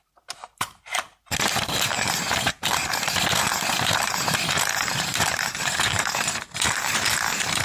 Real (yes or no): no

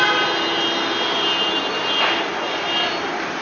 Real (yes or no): yes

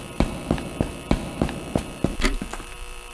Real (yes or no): no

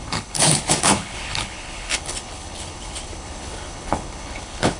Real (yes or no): no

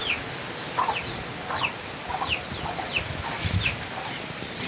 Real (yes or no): yes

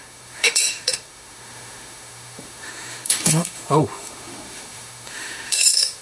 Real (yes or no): no